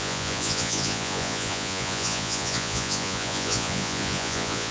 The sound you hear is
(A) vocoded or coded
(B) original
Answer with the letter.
A